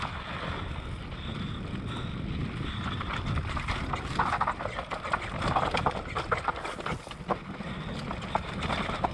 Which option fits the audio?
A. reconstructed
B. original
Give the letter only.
B